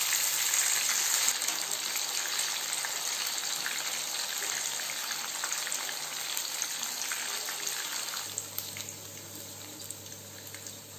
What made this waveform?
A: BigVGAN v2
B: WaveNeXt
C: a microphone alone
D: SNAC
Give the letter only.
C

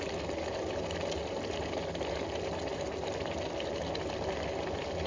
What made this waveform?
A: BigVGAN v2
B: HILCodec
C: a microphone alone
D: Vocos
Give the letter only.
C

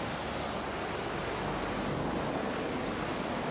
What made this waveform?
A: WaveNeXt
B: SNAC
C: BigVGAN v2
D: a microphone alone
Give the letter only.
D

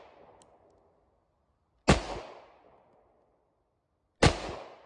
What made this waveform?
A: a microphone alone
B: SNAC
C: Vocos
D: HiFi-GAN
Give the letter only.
A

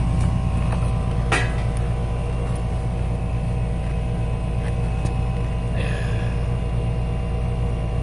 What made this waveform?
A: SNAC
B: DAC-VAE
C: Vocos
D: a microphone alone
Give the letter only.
D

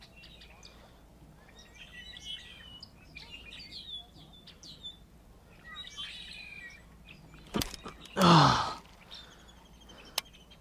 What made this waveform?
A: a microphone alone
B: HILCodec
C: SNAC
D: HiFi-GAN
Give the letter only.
A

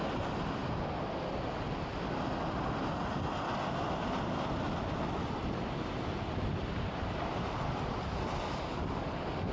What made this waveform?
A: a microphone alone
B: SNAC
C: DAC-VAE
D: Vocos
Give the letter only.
A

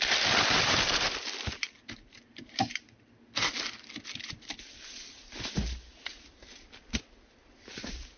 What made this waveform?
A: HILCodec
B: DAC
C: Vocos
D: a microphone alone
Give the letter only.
D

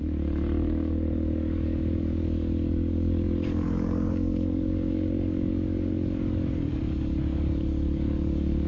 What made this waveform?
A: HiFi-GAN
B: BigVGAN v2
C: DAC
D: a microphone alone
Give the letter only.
C